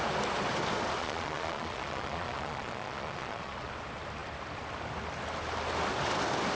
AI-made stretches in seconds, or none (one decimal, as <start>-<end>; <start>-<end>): 1.0-3.7